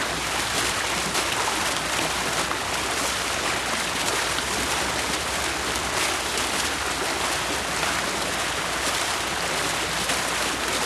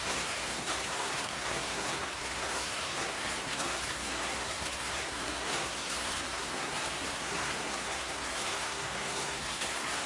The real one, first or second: first